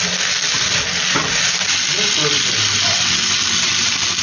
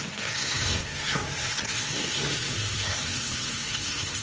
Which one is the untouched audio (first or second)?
first